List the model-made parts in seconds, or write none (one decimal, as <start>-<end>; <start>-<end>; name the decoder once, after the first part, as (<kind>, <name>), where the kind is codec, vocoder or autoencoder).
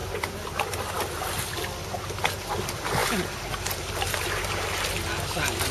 none